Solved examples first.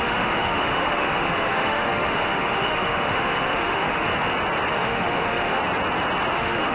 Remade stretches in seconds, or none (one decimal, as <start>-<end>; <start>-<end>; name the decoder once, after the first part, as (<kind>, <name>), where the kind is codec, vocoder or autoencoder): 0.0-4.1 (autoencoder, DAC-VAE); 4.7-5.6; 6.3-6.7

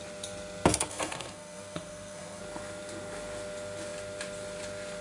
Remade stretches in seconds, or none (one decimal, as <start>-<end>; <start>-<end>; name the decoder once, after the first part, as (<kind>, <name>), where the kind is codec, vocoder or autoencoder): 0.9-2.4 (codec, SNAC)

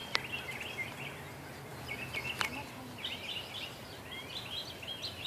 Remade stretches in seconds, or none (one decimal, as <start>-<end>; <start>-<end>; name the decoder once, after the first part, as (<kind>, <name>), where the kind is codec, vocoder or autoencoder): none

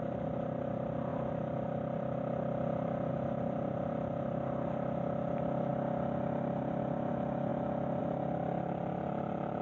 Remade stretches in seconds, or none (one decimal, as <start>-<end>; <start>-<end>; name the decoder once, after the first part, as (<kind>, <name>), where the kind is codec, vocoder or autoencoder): none

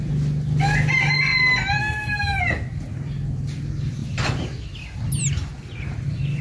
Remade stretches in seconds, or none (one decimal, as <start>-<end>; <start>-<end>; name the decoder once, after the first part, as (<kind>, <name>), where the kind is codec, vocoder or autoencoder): 1.8-2.4 (codec, SNAC)

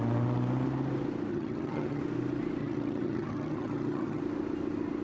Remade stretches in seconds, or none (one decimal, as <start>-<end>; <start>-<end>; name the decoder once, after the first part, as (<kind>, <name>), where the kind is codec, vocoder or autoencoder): 1.3-2.0 (vocoder, HiFi-GAN); 2.6-4.2

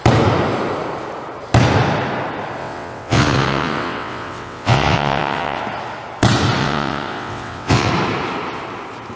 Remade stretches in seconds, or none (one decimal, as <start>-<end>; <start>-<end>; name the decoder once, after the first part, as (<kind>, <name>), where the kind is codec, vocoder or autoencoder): 2.6-5.6 (vocoder, WaveNeXt); 6.6-7.9